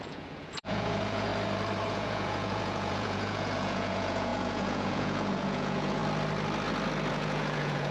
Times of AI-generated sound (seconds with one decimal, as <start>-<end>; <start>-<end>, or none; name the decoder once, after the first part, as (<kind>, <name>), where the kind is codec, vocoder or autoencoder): 0.0-1.3 (vocoder, Vocos); 1.9-6.0; 7.1-7.9